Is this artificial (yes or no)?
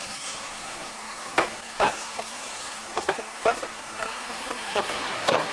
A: yes